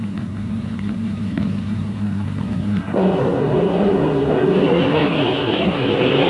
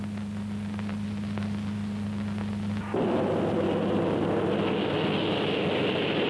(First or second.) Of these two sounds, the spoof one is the first